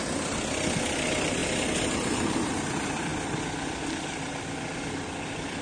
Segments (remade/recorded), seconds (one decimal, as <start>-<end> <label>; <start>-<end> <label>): 0.0-5.6 recorded